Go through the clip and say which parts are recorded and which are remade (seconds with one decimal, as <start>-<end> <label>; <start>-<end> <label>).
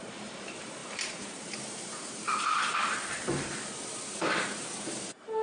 0.0-5.4 remade